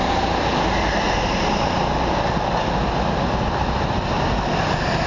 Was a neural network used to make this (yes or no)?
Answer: no